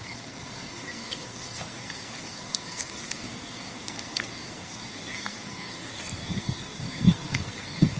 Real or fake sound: fake